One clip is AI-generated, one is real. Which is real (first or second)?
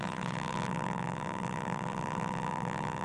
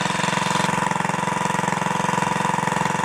second